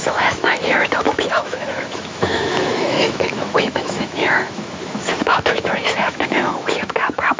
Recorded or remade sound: remade